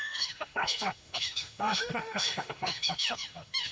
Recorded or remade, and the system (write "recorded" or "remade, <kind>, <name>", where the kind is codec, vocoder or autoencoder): remade, autoencoder, DAC-VAE